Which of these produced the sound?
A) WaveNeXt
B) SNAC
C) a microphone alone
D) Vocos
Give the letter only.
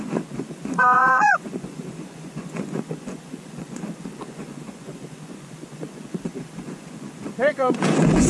D